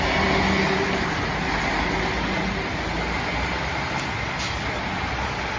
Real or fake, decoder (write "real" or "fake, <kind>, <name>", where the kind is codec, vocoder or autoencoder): real